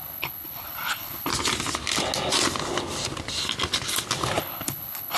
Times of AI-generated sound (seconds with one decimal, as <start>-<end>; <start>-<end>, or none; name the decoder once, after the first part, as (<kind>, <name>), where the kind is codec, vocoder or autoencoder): 0.0-1.3 (codec, HILCodec); 4.4-5.2